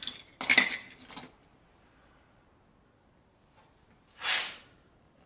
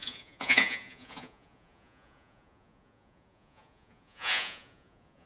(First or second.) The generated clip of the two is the second